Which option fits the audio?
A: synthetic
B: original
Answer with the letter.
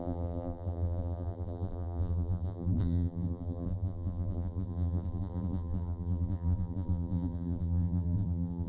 A